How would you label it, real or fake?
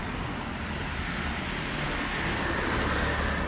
real